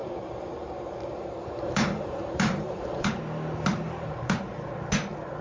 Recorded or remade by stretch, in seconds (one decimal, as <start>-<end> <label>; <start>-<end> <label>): 0.0-3.2 remade; 3.2-3.7 recorded; 3.7-4.7 remade; 4.7-5.4 recorded